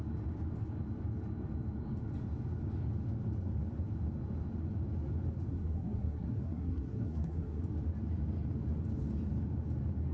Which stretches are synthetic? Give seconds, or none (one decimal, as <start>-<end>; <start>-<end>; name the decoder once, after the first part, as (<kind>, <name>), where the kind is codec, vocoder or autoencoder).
5.5-7.6 (codec, SNAC)